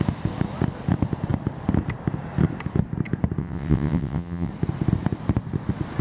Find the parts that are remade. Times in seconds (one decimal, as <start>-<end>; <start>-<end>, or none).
3.4-4.5